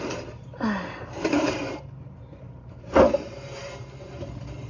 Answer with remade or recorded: remade